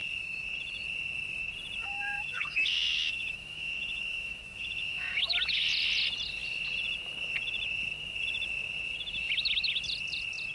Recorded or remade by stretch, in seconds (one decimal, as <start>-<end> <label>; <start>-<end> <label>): 0.0-1.8 recorded; 1.8-5.2 remade; 5.2-10.5 recorded